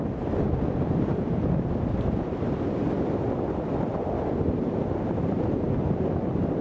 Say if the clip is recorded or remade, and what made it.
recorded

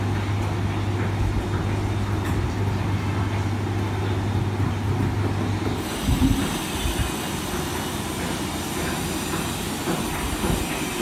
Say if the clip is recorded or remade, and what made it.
recorded